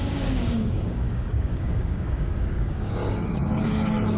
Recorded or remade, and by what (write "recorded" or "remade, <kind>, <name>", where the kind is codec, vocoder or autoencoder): remade, codec, DAC